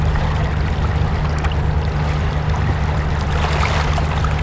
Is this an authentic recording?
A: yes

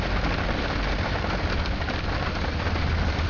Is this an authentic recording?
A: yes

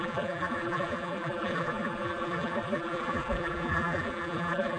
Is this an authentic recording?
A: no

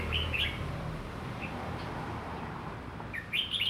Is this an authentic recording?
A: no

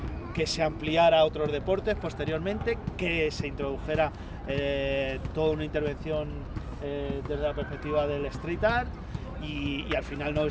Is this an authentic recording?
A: yes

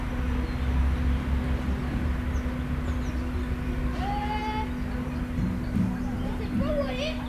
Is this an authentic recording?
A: yes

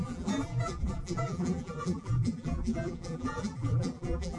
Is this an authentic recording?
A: no